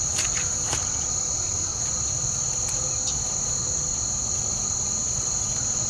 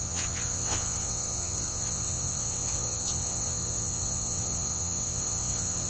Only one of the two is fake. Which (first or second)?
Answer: second